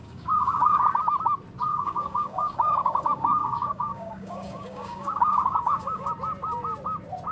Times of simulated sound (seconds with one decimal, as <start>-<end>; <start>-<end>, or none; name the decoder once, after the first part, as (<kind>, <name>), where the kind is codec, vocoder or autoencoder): 0.0-0.8 (codec, DAC); 1.7-6.1